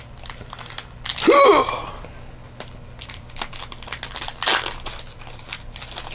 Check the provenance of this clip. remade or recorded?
recorded